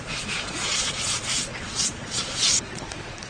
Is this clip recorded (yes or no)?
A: no